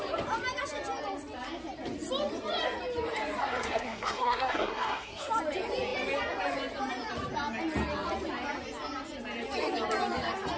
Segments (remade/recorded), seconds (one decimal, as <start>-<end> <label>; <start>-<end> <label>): 0.0-3.4 recorded; 3.4-5.3 remade; 5.3-10.6 recorded